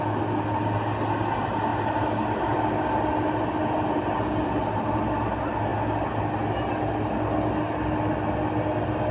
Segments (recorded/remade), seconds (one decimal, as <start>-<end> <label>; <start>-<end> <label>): 0.0-9.1 recorded